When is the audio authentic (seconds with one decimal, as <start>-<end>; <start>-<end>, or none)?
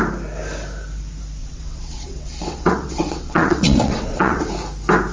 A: 0.0-1.4; 4.5-5.1